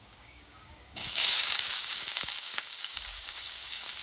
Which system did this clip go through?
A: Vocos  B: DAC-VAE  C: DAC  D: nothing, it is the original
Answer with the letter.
C